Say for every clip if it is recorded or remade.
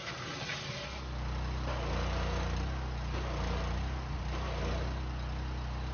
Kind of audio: recorded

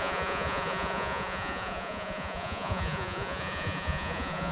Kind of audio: remade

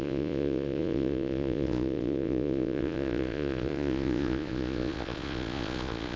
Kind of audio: remade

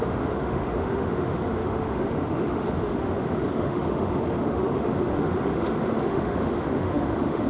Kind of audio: remade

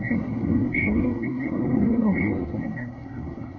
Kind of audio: remade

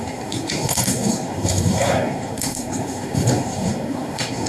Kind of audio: remade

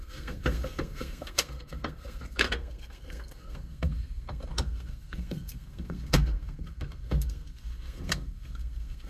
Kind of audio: remade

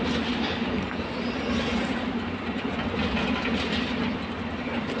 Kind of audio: recorded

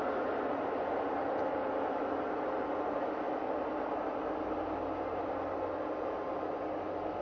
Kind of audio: recorded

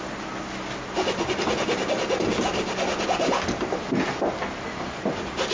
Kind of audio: recorded